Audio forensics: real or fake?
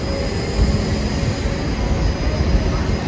real